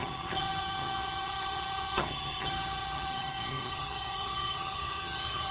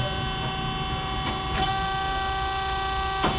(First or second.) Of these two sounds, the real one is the second